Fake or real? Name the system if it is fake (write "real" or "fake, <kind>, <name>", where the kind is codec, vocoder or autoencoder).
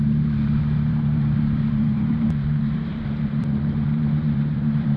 fake, vocoder, BigVGAN v2